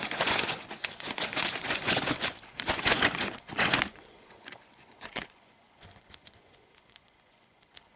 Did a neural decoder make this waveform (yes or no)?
yes